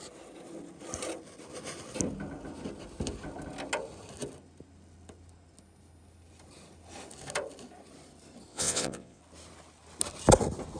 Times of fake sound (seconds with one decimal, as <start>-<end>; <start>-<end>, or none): 8.5-9.2